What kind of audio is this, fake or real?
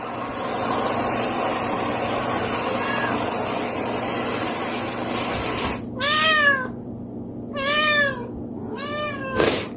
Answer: real